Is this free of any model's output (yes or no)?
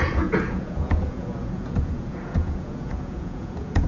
no